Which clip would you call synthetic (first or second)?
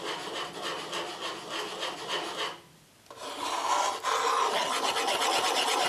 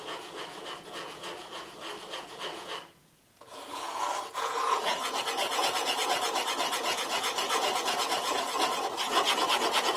second